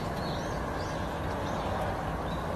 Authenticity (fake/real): real